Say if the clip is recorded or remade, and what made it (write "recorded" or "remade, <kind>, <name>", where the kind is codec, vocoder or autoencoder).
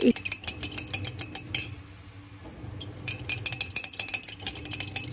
recorded